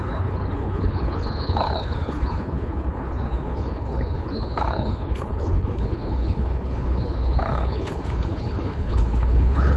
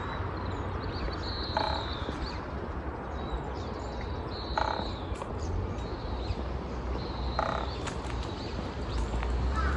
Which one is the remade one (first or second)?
first